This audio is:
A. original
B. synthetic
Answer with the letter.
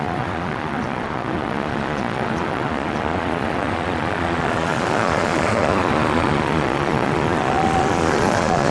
B